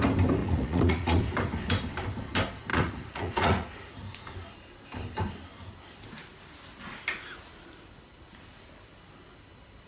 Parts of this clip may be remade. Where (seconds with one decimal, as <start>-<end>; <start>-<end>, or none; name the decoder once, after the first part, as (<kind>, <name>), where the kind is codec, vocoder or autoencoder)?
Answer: 0.4-1.2 (vocoder, Vocos); 2.7-4.3

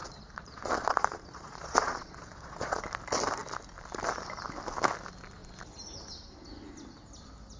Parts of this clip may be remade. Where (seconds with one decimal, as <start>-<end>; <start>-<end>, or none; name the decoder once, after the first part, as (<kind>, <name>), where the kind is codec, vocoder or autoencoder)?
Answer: 0.0-2.8 (vocoder, Vocos)

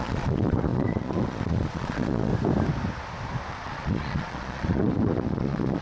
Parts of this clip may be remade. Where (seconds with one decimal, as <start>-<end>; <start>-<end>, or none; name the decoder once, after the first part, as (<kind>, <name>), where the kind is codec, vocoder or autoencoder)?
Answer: 0.0-2.3 (vocoder, Vocos); 3.5-5.8

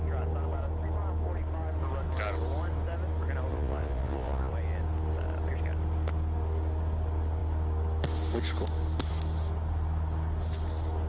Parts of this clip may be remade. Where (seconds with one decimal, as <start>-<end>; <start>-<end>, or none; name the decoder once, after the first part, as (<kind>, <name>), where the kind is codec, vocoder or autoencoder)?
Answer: 3.5-4.5 (vocoder, Vocos)

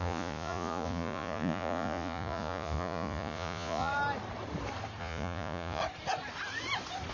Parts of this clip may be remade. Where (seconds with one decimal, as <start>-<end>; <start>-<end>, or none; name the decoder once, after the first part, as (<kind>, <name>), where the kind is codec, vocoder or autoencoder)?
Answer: 0.0-3.9 (vocoder, Vocos); 5.0-5.8

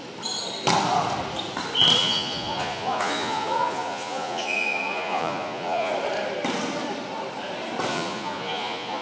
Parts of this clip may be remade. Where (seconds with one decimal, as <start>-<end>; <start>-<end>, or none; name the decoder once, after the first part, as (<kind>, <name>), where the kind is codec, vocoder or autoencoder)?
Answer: 2.0-5.9 (vocoder, Vocos); 7.9-9.0